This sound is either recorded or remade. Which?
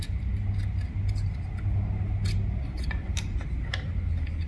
recorded